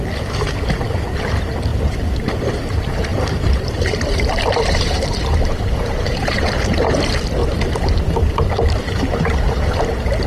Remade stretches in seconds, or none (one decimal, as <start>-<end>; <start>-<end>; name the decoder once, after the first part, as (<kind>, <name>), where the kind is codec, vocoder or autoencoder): 0.0-7.4 (vocoder, BigVGAN v2); 8.2-10.3